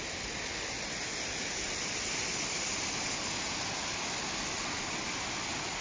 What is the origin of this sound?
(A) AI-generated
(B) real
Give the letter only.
B